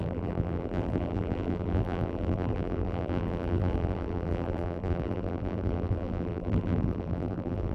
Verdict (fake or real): fake